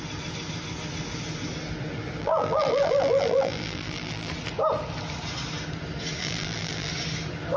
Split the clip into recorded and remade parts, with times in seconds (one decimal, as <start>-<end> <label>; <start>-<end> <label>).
0.0-2.2 recorded; 2.2-4.3 remade; 4.3-6.2 recorded; 6.2-6.9 remade; 6.9-7.6 recorded